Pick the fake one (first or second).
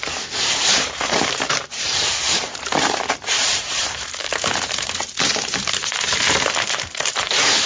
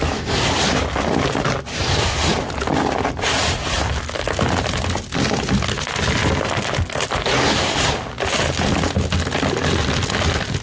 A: first